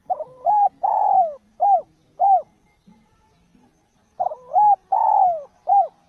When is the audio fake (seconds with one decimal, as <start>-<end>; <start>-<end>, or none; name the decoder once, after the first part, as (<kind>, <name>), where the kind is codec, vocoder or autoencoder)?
0.0-1.0 (vocoder, BigVGAN v2)